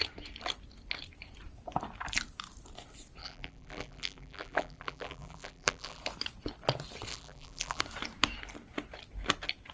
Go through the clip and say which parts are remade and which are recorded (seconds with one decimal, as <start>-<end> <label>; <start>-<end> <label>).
0.0-3.2 recorded; 3.2-6.0 remade; 6.0-7.1 recorded; 7.1-7.8 remade; 7.8-9.7 recorded